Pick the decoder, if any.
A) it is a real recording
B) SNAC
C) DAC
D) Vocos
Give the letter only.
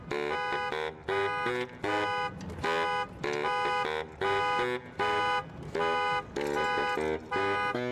A